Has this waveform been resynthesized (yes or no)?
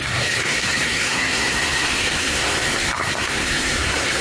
yes